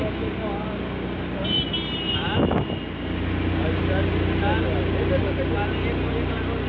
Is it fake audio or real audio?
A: real